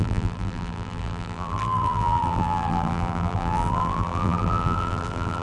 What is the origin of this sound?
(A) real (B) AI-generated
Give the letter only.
B